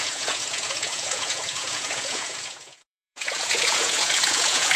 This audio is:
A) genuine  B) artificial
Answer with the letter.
B